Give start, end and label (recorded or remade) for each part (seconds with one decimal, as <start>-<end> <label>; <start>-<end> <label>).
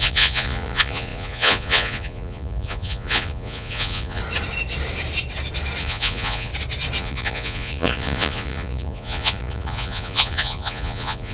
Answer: 0.0-4.2 remade; 4.2-5.8 recorded; 5.8-6.5 remade; 6.5-7.0 recorded; 7.0-11.3 remade